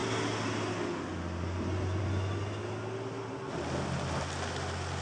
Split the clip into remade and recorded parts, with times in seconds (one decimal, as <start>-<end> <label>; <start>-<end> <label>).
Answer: 0.0-5.0 recorded